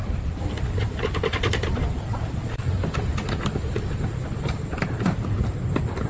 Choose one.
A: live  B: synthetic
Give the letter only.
A